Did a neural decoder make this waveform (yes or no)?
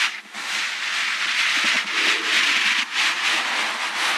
no